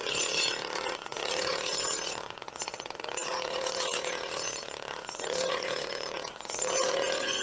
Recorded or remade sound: remade